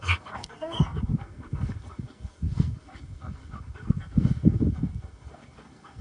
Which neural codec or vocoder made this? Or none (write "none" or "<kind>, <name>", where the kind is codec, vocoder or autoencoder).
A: codec, SNAC